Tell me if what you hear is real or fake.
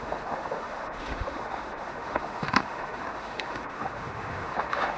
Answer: fake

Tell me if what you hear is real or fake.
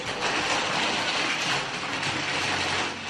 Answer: real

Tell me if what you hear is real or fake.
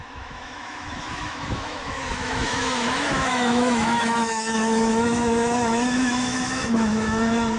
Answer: fake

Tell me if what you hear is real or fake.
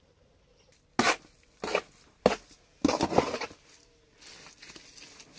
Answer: real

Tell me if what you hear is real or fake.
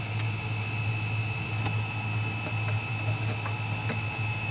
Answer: real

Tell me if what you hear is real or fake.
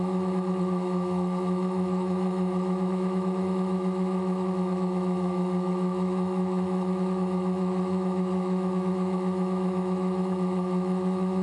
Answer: fake